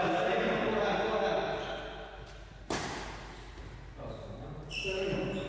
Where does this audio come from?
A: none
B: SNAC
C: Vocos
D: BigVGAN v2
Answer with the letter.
A